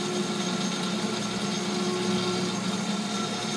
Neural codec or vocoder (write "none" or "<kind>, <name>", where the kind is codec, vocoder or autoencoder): none